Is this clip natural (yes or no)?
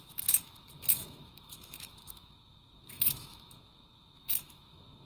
no